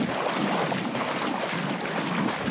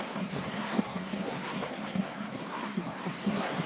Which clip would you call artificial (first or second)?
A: second